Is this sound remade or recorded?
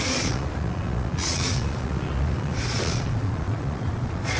remade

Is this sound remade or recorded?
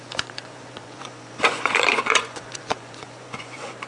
remade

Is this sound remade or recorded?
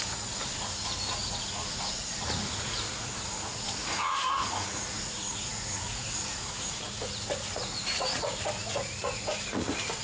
remade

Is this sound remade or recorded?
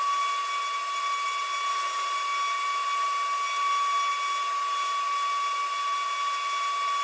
recorded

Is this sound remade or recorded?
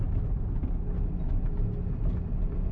recorded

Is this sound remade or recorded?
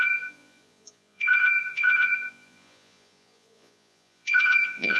remade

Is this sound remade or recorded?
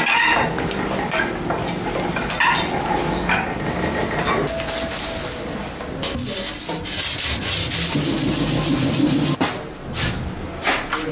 recorded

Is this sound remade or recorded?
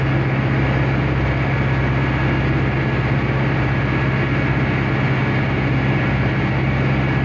recorded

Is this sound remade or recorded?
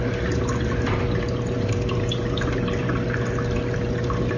recorded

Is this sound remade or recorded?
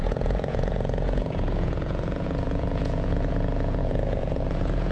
remade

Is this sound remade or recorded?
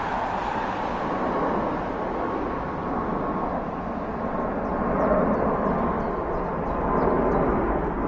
recorded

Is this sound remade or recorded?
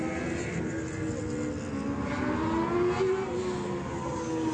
recorded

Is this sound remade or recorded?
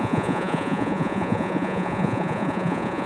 remade